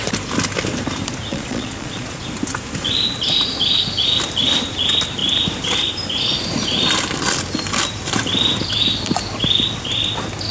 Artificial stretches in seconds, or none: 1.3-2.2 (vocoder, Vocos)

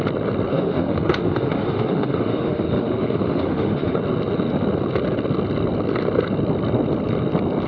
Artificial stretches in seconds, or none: 0.5-4.0 (autoencoder, DAC-VAE)

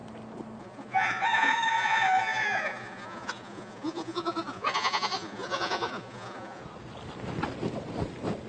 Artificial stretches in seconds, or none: 0.6-6.6 (vocoder, Vocos)

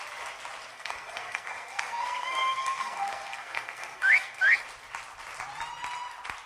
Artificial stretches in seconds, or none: 0.7-4.6 (codec, SNAC)